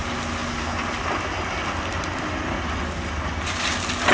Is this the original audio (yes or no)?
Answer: yes